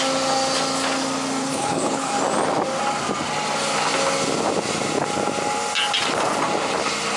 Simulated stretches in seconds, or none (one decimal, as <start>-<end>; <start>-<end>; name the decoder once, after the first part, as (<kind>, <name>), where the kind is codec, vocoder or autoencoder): 1.4-2.1 (codec, HILCodec)

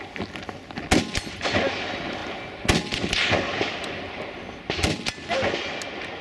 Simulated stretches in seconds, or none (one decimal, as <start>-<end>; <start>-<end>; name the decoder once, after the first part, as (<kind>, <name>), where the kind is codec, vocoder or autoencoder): none

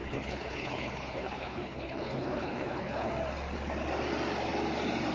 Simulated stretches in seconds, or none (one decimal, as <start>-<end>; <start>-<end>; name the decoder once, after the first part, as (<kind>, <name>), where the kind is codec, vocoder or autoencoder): 0.0-3.1 (codec, HILCodec)